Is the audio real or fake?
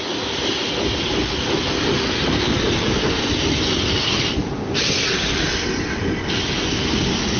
real